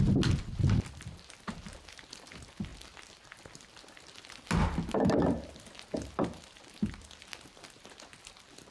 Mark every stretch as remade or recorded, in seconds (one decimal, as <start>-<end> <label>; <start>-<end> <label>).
0.0-8.7 recorded